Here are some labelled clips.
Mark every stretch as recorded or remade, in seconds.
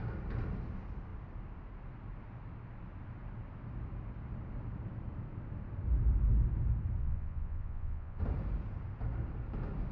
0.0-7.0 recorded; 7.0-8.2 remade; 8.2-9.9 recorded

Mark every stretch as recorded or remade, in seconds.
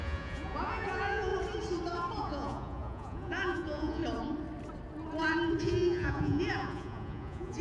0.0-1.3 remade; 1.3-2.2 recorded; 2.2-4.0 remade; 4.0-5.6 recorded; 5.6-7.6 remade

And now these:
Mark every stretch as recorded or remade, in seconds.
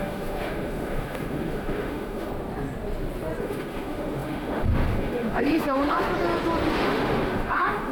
0.0-2.3 remade; 2.3-3.4 recorded; 3.4-6.1 remade; 6.1-6.7 recorded; 6.7-7.9 remade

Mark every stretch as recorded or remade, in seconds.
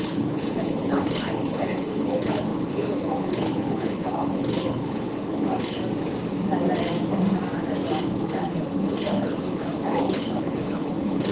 0.0-5.8 remade; 5.8-8.0 recorded; 8.0-11.3 remade